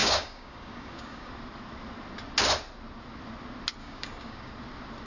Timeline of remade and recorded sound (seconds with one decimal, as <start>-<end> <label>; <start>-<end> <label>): 0.0-1.3 remade; 1.3-3.8 recorded; 3.8-4.5 remade; 4.5-5.1 recorded